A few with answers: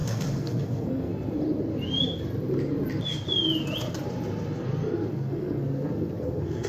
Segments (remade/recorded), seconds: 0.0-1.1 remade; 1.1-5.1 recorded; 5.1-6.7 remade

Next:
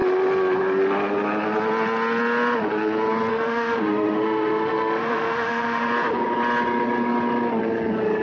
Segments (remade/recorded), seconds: 0.0-3.3 recorded; 3.3-5.9 remade; 5.9-8.2 recorded

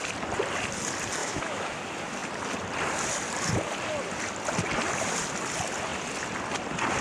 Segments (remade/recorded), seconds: 0.0-1.2 recorded; 1.2-1.8 remade; 1.8-7.0 recorded

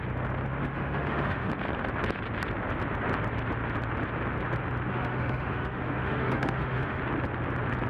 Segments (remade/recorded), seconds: 0.0-0.6 recorded; 0.6-1.5 remade; 1.5-4.9 recorded; 4.9-7.0 remade; 7.0-7.9 recorded

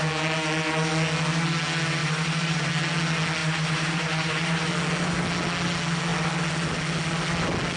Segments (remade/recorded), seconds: 0.0-2.0 recorded; 2.0-2.7 remade; 2.7-3.4 recorded; 3.4-4.7 remade; 4.7-7.8 recorded